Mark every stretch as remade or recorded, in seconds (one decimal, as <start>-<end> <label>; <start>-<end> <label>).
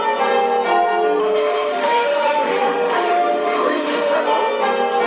0.0-1.2 recorded; 1.2-4.2 remade; 4.2-5.1 recorded